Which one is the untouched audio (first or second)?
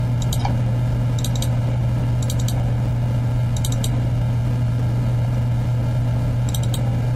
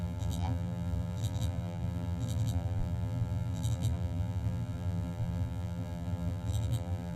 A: first